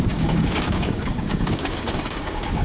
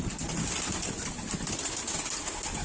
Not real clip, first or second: first